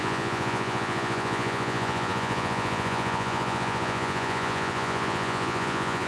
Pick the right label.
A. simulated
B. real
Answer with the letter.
A